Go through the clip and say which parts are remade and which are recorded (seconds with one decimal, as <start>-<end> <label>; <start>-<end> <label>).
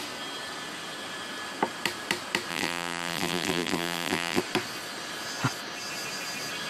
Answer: 0.0-2.5 recorded; 2.5-4.4 remade; 4.4-6.7 recorded